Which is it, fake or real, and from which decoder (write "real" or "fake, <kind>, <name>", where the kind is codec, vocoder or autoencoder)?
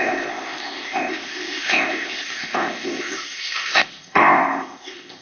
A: fake, codec, ZipCodec